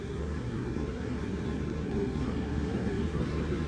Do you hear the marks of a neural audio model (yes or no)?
yes